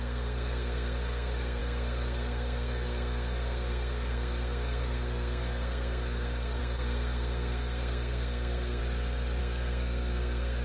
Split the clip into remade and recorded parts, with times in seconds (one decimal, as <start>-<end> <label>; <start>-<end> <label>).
0.0-8.8 remade; 8.8-9.4 recorded; 9.4-10.6 remade